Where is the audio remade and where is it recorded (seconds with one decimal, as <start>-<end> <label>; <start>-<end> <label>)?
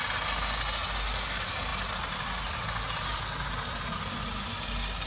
0.0-5.1 recorded